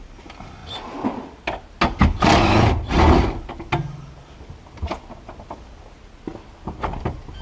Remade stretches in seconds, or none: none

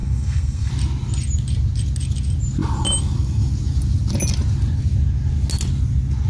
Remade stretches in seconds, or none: 0.0-0.7 (codec, SNAC)